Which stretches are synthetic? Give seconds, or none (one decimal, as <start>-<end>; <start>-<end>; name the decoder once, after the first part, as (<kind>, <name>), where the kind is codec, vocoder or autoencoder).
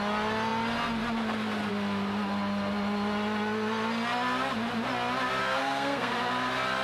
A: 5.4-6.1 (codec, SNAC)